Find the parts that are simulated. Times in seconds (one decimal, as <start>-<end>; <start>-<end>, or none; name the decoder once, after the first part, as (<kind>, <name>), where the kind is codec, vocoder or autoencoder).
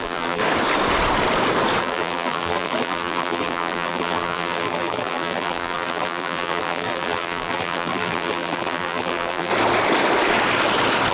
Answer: 0.0-0.4 (vocoder, BigVGAN v2); 1.8-9.5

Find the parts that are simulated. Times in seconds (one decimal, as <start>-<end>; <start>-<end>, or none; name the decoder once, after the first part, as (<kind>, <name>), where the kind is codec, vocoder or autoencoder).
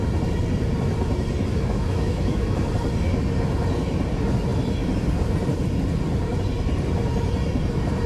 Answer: 1.5-2.7 (autoencoder, DAC-VAE)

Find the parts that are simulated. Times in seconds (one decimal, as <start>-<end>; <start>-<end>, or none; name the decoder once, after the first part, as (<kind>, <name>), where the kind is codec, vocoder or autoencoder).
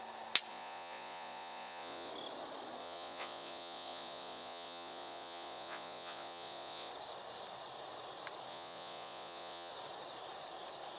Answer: 0.5-2.1 (vocoder, Vocos); 2.8-6.9; 8.5-9.7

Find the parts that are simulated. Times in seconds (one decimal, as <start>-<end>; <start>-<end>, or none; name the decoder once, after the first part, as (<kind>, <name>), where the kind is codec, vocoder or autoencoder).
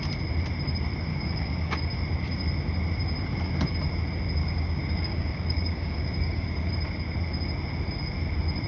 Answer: 1.1-1.8 (codec, DAC); 4.4-6.7